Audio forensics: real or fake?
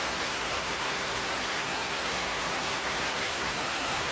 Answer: fake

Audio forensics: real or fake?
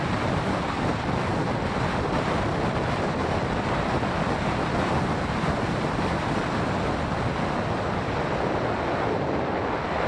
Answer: real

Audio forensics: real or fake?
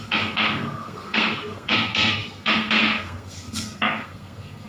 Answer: fake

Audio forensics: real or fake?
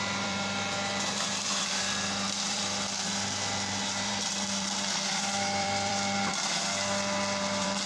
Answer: fake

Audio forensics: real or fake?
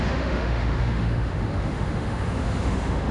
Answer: fake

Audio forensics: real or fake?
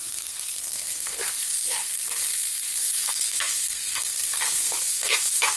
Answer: fake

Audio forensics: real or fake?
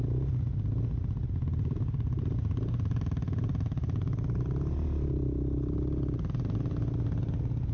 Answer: real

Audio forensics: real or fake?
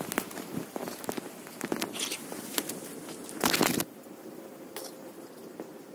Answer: real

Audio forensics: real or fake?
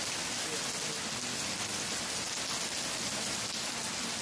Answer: real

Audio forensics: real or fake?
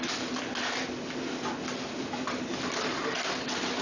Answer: real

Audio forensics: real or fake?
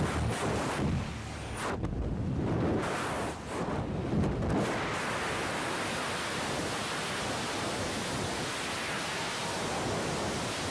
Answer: real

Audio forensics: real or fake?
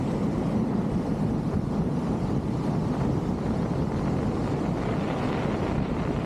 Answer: fake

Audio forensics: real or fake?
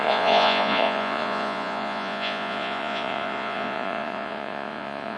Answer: fake